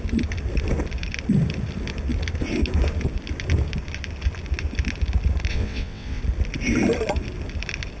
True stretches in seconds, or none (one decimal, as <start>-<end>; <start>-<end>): 0.0-5.5; 6.2-8.0